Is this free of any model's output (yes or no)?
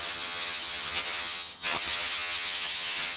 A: no